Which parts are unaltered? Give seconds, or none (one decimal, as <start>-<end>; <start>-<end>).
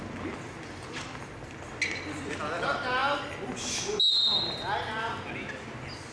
0.0-6.1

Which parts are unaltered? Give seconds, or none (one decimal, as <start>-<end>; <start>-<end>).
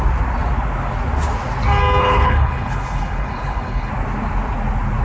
0.0-2.0; 3.9-5.0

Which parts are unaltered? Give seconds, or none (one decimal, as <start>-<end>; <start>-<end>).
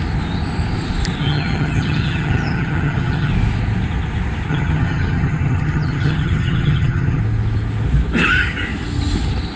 0.0-1.2; 3.3-4.5; 7.2-9.6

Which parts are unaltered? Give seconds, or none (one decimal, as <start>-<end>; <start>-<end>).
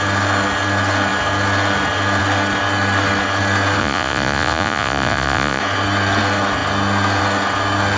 0.0-3.8; 5.6-8.0